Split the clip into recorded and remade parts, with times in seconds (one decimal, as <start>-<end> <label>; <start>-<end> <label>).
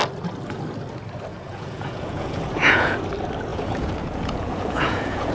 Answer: 0.0-1.3 recorded; 1.3-3.0 remade; 3.0-3.5 recorded; 3.5-5.3 remade